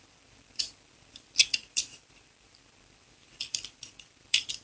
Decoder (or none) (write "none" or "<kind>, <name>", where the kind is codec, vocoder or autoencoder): vocoder, BigVGAN v2